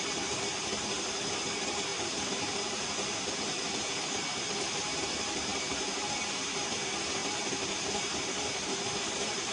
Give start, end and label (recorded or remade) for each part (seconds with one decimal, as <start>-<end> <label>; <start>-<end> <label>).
0.0-9.5 remade